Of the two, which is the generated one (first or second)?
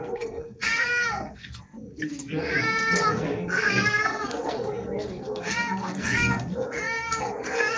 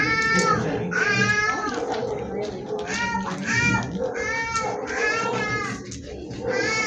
first